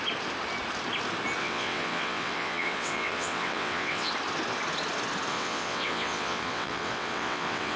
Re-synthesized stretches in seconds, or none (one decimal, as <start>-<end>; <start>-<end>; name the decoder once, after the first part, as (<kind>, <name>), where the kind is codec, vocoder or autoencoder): 1.4-4.1 (vocoder, WaveNeXt); 5.3-7.8